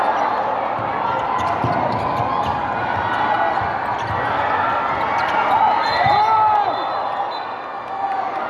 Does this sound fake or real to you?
real